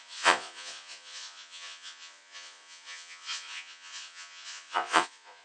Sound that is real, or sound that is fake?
fake